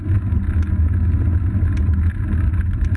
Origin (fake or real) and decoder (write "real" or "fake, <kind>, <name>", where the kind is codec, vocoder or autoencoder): real